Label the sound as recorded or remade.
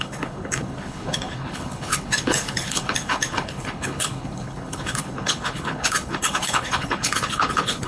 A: remade